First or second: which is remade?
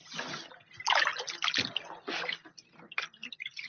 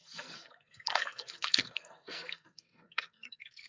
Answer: second